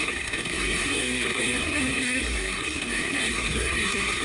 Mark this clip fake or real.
fake